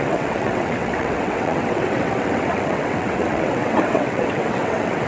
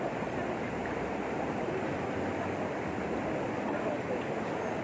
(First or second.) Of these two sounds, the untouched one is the second